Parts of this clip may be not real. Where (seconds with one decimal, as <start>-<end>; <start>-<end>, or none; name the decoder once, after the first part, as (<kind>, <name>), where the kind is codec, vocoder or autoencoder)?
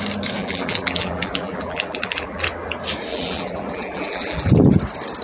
0.4-2.4 (vocoder, BigVGAN v2); 3.1-4.5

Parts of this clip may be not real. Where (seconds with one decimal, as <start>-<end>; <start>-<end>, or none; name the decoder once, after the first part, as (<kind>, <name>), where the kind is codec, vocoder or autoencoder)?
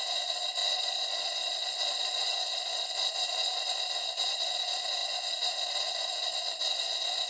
0.6-3.1 (vocoder, Vocos)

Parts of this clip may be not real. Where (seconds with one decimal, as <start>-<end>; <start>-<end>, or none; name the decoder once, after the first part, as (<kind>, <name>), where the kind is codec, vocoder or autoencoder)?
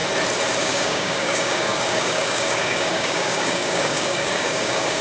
0.6-5.0 (codec, DAC)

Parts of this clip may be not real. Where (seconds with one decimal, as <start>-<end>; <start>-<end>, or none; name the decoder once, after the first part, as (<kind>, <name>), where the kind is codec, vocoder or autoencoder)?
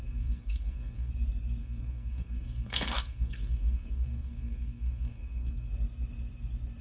0.0-1.1 (codec, SNAC); 1.6-5.7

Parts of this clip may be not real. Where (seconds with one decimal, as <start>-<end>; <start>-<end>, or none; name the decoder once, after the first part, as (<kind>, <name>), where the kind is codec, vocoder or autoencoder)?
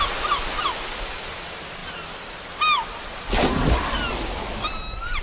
none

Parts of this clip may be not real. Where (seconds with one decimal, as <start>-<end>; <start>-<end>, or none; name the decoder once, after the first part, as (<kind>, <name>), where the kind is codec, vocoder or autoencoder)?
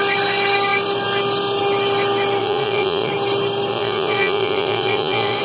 2.4-3.1 (vocoder, Vocos); 3.7-5.4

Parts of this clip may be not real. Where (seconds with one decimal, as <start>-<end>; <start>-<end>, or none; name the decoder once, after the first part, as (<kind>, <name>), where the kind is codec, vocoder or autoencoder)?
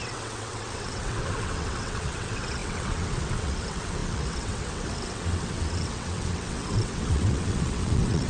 0.0-8.3 (vocoder, WaveNeXt)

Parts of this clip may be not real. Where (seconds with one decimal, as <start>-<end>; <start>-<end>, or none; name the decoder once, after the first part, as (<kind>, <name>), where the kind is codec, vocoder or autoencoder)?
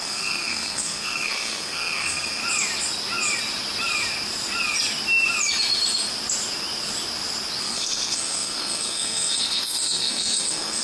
0.0-2.4 (codec, SNAC); 7.6-10.8